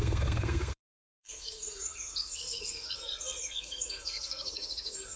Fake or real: fake